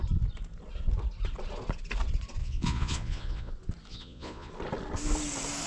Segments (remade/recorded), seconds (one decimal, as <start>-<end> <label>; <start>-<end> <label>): 0.0-2.4 recorded; 2.4-3.5 remade; 3.5-3.9 recorded; 3.9-4.5 remade; 4.5-5.7 recorded